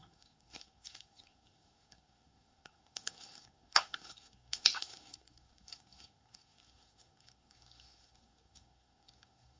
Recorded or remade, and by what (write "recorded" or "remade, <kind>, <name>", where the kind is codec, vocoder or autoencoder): remade, codec, SNAC